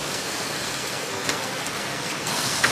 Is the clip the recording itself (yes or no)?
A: no